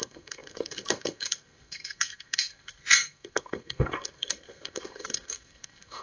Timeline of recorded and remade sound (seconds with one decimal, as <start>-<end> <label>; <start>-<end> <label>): 0.0-6.0 remade